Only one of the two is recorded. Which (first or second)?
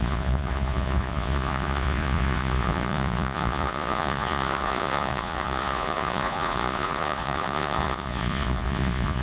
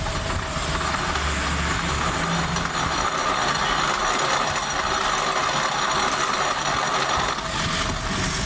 second